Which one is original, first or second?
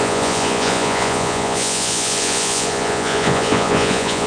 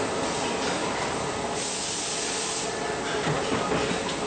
second